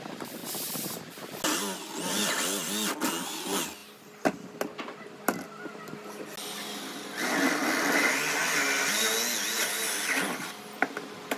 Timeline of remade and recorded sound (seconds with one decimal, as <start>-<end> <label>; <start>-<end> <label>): 0.0-11.4 recorded